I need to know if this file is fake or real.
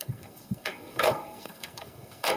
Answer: fake